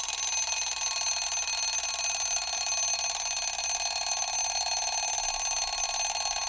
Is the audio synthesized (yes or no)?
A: no